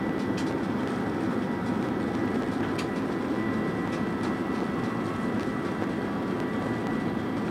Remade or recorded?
recorded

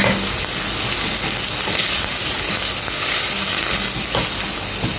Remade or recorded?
recorded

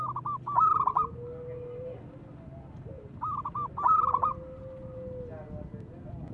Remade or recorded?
recorded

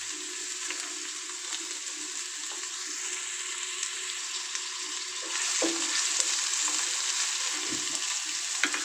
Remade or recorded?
recorded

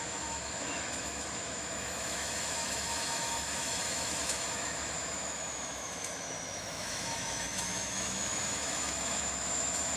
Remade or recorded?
remade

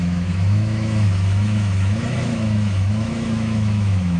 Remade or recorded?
remade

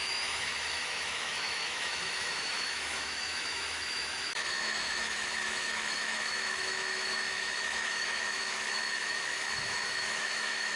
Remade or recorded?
remade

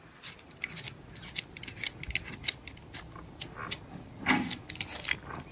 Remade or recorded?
recorded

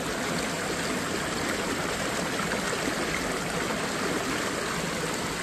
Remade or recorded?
recorded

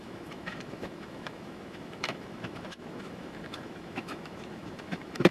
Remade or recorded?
remade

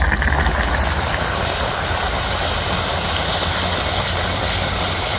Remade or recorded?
recorded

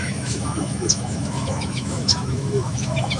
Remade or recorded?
remade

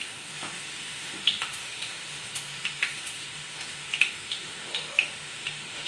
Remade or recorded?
remade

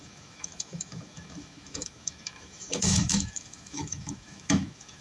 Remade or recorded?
remade